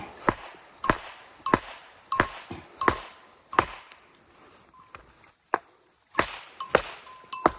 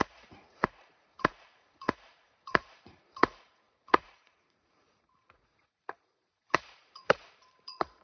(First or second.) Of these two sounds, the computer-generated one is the second